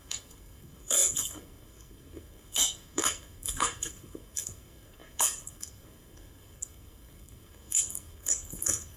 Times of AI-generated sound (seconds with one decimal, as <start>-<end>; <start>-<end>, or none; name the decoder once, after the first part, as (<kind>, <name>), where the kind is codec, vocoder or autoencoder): 0.0-9.0 (codec, SNAC)